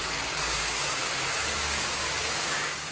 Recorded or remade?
remade